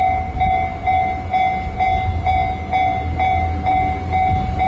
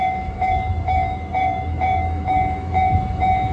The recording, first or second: first